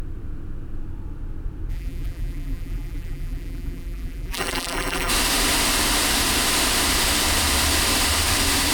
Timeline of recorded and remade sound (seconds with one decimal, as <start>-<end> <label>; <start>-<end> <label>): 0.0-1.7 recorded; 1.7-5.1 remade; 5.1-8.7 recorded